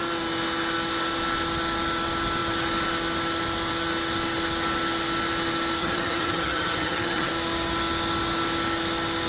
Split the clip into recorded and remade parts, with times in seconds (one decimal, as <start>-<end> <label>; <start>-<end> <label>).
0.0-5.8 recorded; 5.8-7.3 remade; 7.3-9.3 recorded